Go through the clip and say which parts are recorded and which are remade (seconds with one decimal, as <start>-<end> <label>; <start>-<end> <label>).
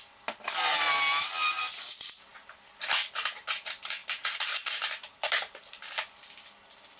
0.0-4.0 recorded; 4.0-5.8 remade; 5.8-7.0 recorded